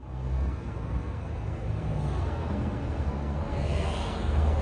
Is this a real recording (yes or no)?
no